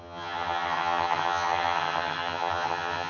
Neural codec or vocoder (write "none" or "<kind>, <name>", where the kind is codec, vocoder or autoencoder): vocoder, HiFi-GAN